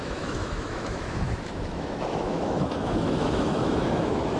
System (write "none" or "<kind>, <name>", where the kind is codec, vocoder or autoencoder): autoencoder, DAC-VAE